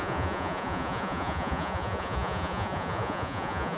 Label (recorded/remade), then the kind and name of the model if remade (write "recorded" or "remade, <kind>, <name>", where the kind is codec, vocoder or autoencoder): remade, vocoder, Vocos